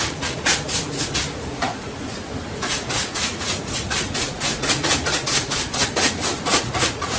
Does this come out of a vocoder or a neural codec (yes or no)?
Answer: yes